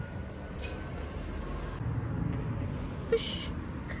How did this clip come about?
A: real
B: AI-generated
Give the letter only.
A